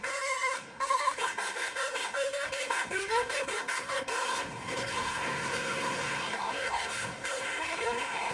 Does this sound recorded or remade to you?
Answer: remade